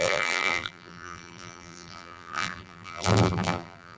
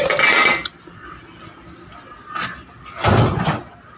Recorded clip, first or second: second